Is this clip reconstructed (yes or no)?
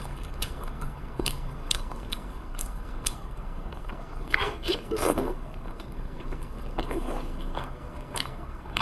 yes